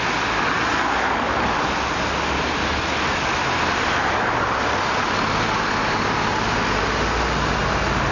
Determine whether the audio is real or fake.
real